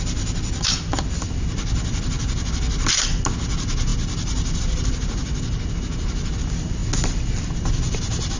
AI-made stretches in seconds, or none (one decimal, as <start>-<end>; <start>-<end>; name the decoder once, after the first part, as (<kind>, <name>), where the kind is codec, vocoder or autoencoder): none